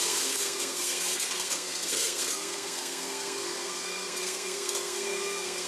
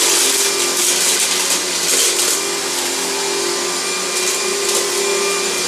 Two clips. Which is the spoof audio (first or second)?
first